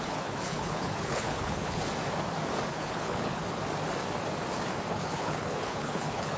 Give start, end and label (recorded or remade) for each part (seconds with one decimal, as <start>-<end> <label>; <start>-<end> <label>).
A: 0.0-1.8 remade; 1.8-2.7 recorded; 2.7-3.4 remade; 3.4-4.9 recorded; 4.9-6.4 remade